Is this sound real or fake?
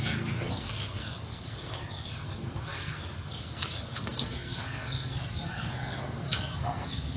fake